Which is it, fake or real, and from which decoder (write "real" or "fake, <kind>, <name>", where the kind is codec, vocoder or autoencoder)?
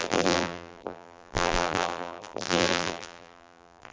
fake, vocoder, BigVGAN v2